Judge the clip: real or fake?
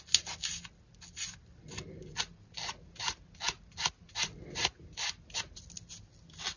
real